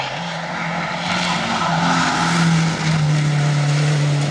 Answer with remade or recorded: recorded